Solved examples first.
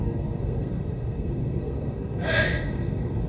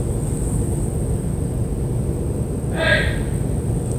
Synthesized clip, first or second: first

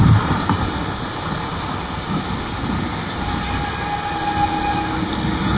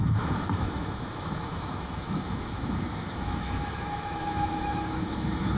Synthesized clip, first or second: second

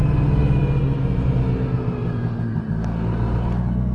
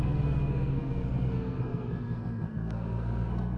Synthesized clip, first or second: second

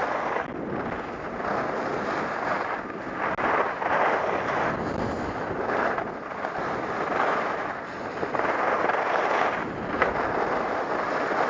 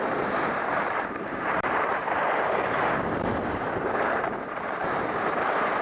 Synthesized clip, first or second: second